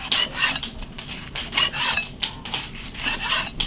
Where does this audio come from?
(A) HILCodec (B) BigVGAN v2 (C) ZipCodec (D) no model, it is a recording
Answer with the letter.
D